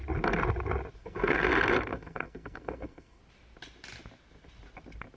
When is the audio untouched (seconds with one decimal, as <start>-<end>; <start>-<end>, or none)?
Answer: 0.0-1.0; 1.5-1.9; 3.2-5.2